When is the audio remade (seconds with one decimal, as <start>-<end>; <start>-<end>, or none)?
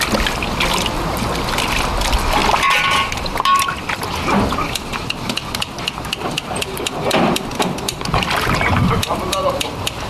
none